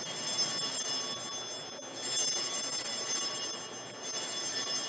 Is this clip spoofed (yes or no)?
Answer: no